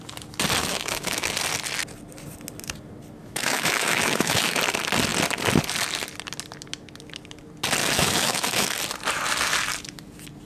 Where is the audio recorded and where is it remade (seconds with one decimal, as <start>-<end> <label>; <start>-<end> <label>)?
0.0-0.6 recorded; 0.6-1.3 remade; 1.3-3.2 recorded; 3.2-4.6 remade; 4.6-7.8 recorded; 7.8-8.7 remade; 8.7-10.5 recorded